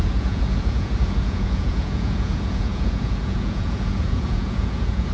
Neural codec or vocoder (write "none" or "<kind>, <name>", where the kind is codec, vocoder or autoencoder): vocoder, Vocos